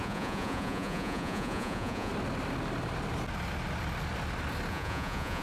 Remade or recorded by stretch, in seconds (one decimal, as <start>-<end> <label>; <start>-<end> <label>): 0.0-2.1 remade; 2.1-4.7 recorded; 4.7-5.4 remade

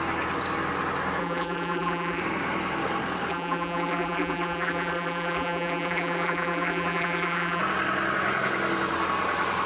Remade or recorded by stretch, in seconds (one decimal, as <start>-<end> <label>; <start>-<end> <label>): 0.0-1.2 recorded; 1.2-2.2 remade; 2.2-3.3 recorded; 3.3-7.6 remade; 7.6-9.7 recorded

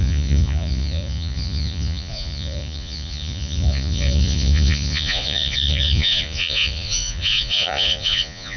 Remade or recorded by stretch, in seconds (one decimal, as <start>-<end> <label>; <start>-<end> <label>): 0.0-8.6 remade